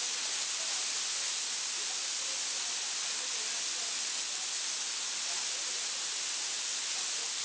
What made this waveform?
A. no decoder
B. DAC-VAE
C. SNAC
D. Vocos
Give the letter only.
A